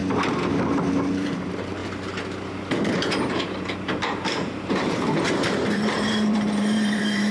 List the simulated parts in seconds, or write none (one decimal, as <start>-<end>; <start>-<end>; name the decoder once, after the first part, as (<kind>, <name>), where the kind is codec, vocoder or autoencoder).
0.9-1.8 (vocoder, BigVGAN v2); 2.7-7.3